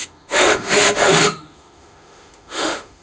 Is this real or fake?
fake